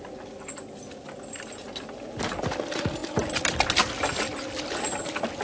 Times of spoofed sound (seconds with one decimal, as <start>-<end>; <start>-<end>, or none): none